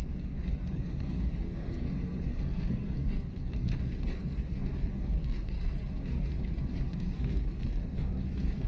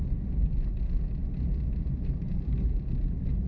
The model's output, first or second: first